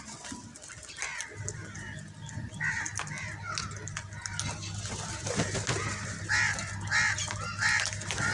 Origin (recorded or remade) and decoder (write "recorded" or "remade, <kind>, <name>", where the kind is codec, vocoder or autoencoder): recorded